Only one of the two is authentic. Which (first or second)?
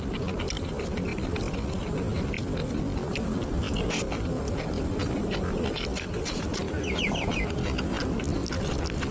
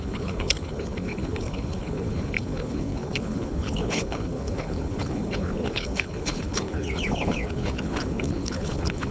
first